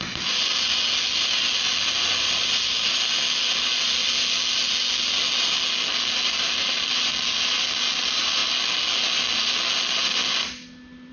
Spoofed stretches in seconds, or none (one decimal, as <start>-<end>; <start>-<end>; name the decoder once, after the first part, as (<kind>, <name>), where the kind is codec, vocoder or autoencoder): none